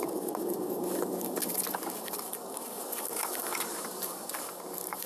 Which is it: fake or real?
fake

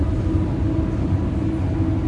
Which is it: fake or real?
real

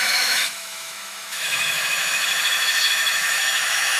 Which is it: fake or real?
fake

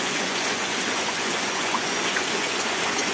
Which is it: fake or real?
fake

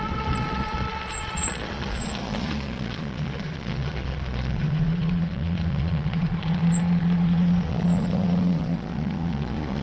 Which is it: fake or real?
fake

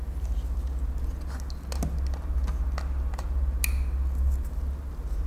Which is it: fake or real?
real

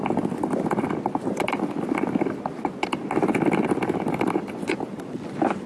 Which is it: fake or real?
real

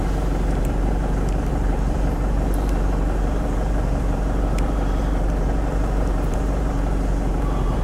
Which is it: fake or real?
fake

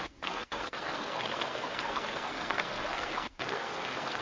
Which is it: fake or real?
fake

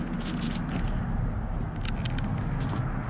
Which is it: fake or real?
real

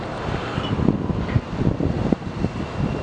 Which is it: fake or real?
real